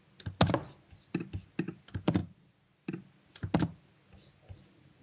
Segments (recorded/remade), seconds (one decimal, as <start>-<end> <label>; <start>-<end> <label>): 0.0-2.2 recorded; 2.2-2.9 remade; 2.9-5.0 recorded